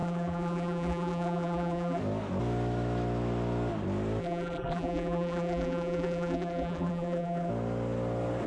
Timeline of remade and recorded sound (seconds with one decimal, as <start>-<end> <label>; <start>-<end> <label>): 0.0-2.0 remade; 2.0-4.2 recorded; 4.2-7.5 remade; 7.5-8.5 recorded